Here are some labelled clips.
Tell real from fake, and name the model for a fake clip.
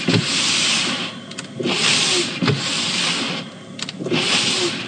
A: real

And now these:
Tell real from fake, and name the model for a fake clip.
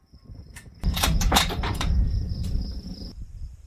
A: fake, vocoder, BigVGAN v2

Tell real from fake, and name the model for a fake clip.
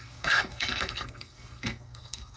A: fake, codec, SNAC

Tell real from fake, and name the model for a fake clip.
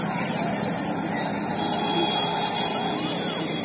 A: real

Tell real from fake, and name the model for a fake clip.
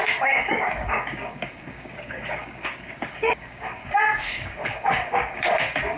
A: fake, codec, DAC